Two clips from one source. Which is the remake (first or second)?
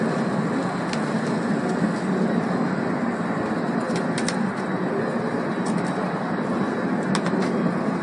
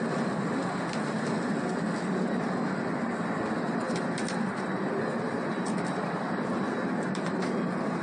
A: second